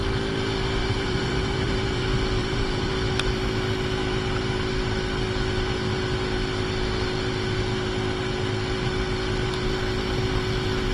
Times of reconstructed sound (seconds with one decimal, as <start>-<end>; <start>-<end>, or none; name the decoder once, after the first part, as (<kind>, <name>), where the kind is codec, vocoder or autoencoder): 0.8-2.0 (vocoder, BigVGAN v2); 2.4-2.9